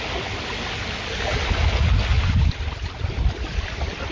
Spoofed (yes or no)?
no